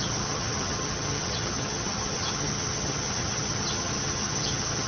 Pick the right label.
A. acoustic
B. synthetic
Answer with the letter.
B